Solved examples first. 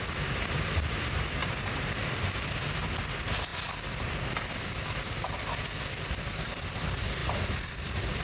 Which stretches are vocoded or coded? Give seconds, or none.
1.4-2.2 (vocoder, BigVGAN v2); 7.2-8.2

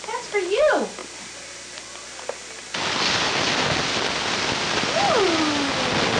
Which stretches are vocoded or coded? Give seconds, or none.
none

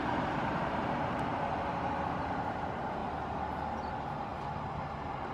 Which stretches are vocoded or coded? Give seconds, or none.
0.0-1.3 (vocoder, BigVGAN v2); 2.5-3.0; 3.9-4.3